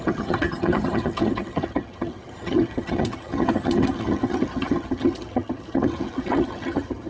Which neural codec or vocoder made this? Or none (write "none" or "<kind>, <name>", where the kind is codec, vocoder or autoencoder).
vocoder, HiFi-GAN